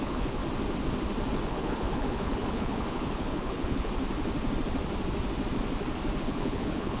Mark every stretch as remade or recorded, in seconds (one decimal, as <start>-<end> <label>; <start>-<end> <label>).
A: 0.0-0.4 remade; 0.4-1.5 recorded; 1.5-3.9 remade; 3.9-6.2 recorded; 6.2-7.0 remade